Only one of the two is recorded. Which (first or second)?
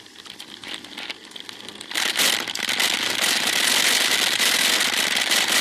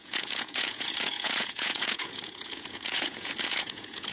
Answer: first